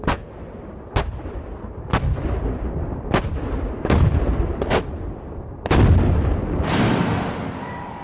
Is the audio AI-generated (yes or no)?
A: yes